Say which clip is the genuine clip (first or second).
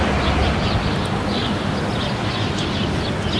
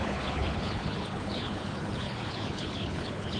first